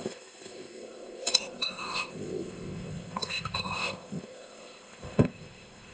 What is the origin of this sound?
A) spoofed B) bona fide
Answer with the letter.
A